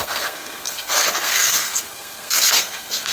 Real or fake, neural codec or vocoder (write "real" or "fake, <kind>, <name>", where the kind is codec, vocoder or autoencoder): fake, codec, SNAC